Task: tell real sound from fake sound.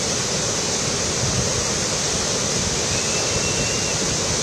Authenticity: real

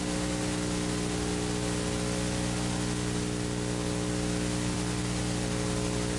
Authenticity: real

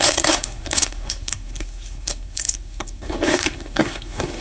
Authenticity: fake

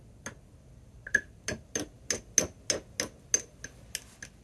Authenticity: real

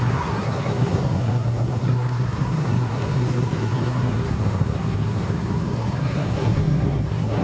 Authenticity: fake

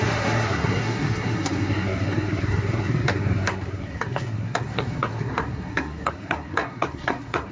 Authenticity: fake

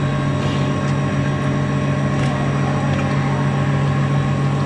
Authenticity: real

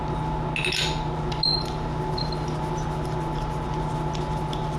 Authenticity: real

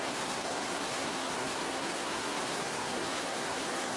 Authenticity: fake